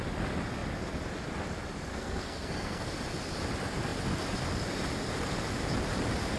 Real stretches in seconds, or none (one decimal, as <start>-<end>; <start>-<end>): 0.0-1.9; 2.9-6.4